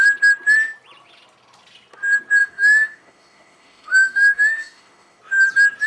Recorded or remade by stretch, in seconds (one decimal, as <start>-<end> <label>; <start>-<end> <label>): 0.0-2.4 recorded; 2.4-5.2 remade; 5.2-5.9 recorded